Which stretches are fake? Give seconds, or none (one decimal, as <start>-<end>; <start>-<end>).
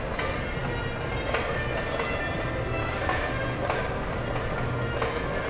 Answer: 2.8-3.3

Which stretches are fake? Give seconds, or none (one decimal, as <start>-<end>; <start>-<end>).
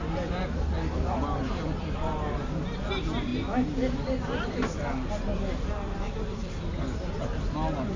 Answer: none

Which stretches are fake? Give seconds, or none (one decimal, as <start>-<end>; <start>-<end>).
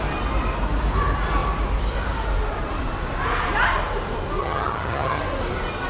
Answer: 4.4-5.2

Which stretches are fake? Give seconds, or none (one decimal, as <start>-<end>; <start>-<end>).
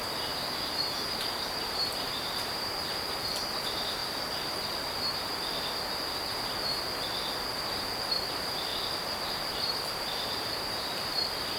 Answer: 0.0-4.0; 8.1-8.7; 9.2-11.6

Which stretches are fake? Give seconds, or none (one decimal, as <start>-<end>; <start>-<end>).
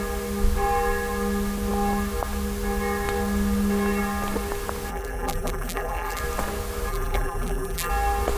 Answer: 4.9-6.2; 6.9-7.9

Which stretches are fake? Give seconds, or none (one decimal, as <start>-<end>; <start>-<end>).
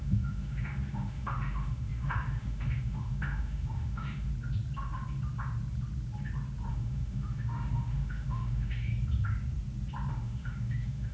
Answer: 0.0-4.3; 6.7-8.9; 10.1-11.1